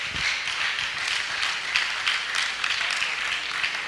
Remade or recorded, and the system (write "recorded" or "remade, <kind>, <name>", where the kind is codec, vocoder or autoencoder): recorded